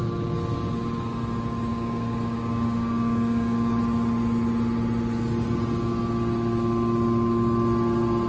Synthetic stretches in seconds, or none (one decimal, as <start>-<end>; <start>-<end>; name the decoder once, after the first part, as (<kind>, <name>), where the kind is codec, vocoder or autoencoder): 1.7-3.8 (codec, DAC)